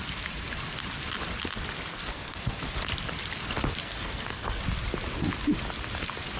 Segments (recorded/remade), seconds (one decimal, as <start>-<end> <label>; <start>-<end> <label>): 0.0-1.9 recorded; 1.9-2.6 remade; 2.6-3.8 recorded; 3.8-4.6 remade; 4.6-6.4 recorded